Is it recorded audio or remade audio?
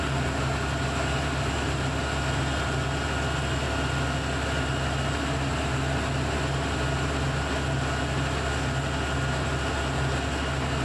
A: recorded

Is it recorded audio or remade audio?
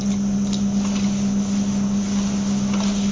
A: recorded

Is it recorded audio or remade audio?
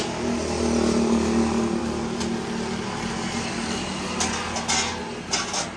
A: recorded